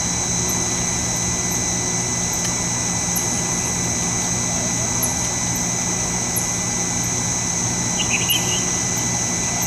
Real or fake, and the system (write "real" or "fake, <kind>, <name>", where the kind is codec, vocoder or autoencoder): real